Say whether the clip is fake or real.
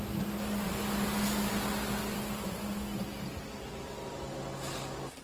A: real